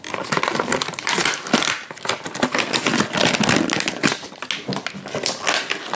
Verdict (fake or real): real